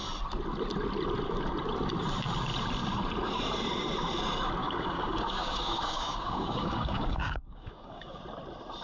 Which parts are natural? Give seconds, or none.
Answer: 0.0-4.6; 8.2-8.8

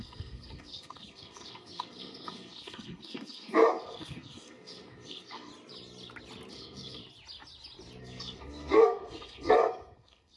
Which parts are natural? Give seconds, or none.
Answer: 5.5-6.5; 7.0-8.0

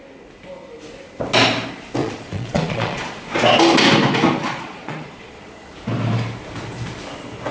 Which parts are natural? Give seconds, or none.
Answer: 0.0-2.0; 3.2-4.4; 5.7-7.5

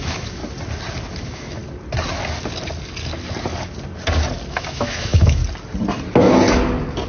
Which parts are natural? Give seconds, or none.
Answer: 0.4-1.2; 1.6-4.5; 5.4-7.1

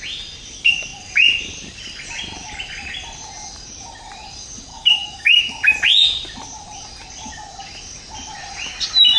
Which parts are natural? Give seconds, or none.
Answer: 0.0-4.7; 5.4-9.2